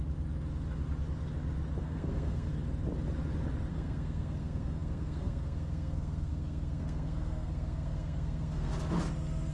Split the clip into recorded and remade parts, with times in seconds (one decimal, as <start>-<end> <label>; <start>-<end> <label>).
0.0-1.8 recorded; 1.8-2.5 remade; 2.5-3.7 recorded; 3.7-8.7 remade; 8.7-9.5 recorded